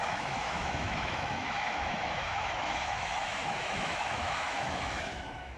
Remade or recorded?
remade